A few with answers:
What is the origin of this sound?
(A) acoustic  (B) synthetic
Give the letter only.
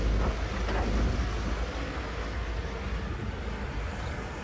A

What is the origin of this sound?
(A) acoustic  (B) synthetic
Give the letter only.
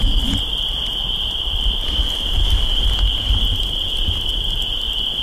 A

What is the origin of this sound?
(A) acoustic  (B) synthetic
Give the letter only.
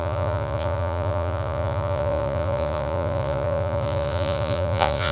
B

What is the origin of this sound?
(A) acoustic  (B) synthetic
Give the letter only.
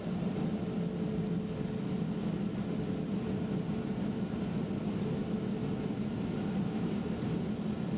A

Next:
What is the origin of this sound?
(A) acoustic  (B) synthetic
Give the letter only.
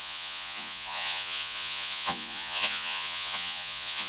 B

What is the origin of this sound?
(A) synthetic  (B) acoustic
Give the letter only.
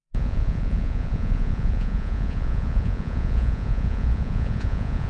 A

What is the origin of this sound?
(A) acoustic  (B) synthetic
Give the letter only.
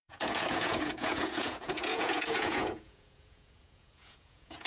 B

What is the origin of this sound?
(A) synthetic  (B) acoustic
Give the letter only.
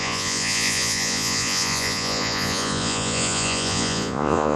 A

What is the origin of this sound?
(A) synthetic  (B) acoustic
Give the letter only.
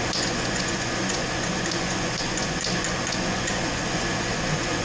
A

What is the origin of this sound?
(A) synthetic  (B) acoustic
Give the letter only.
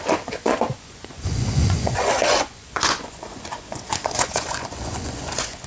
A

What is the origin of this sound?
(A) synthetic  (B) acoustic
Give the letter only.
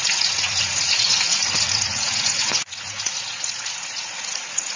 A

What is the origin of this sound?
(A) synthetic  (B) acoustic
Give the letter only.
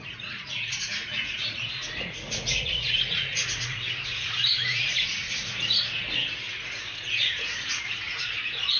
A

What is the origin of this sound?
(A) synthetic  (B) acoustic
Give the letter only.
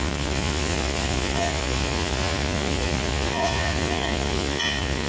A